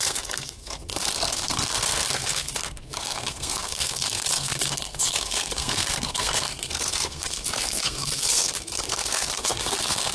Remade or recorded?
remade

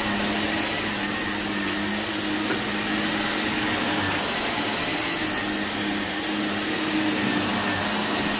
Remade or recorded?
recorded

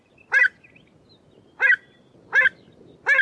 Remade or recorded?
recorded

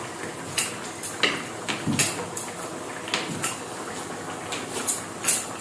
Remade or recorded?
recorded